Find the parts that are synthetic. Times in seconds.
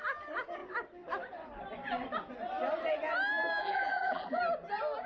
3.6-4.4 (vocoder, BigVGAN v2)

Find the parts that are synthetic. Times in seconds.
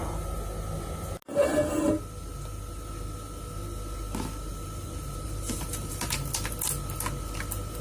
4.5-6.5 (vocoder, BigVGAN v2)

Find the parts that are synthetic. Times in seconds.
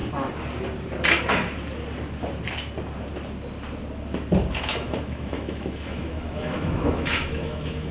4.7-7.9 (autoencoder, DAC-VAE)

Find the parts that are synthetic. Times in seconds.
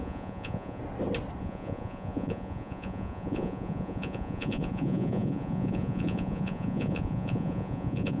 0.0-0.8 (vocoder, Vocos); 1.4-8.2